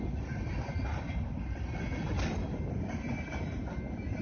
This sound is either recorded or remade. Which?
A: recorded